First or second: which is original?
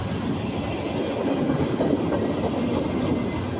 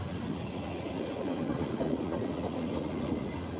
first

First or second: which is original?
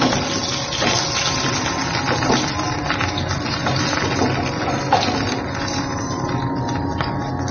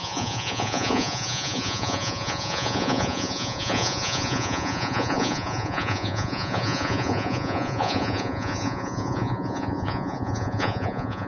first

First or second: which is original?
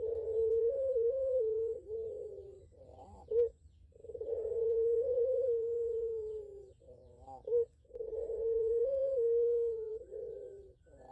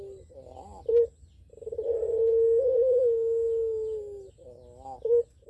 second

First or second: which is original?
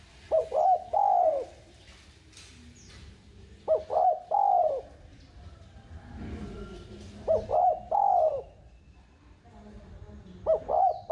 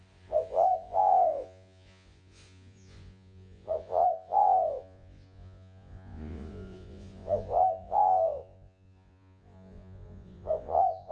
first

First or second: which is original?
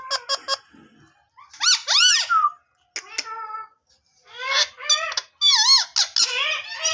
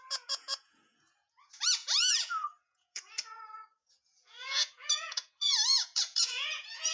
first